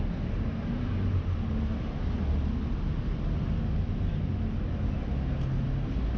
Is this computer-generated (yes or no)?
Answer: no